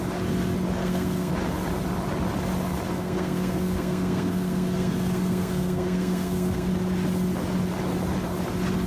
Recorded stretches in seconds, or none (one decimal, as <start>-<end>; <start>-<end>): 0.0-0.8; 1.3-2.9; 6.7-8.9